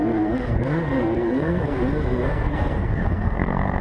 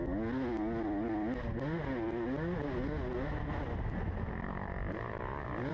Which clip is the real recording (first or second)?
second